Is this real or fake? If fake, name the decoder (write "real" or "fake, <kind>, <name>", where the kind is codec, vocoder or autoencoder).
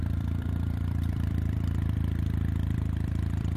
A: fake, vocoder, BigVGAN v2